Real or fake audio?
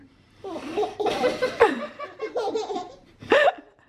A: fake